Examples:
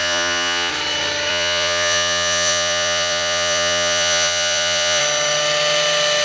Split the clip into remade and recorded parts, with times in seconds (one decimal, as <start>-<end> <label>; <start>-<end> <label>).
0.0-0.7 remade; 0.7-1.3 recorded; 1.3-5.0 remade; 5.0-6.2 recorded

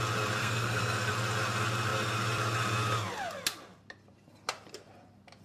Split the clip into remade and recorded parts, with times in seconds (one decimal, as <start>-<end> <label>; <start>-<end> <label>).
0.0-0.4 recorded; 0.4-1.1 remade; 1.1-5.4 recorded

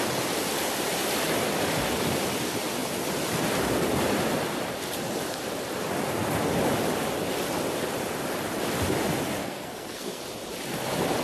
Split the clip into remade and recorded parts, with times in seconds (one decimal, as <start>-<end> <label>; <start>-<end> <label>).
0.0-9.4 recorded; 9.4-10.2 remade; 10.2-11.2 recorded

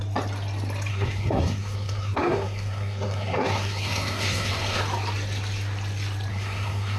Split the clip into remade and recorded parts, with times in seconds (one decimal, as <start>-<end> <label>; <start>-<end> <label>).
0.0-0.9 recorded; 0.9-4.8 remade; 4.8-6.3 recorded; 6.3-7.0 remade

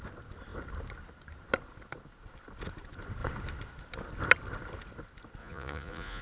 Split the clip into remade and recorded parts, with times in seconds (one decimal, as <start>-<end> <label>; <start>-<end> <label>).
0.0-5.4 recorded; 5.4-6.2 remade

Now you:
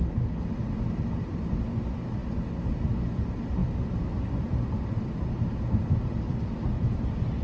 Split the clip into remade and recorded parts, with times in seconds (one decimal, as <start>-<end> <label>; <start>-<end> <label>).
0.0-7.4 recorded